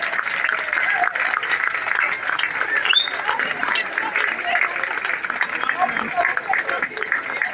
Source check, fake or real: real